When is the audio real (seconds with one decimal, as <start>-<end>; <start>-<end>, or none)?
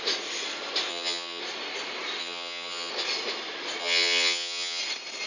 0.0-0.9; 1.4-2.2; 2.9-3.8; 4.8-5.3